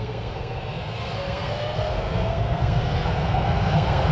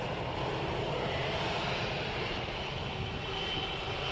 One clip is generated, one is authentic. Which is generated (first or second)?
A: first